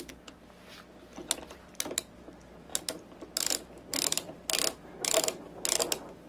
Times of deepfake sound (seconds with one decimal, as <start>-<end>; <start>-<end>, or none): none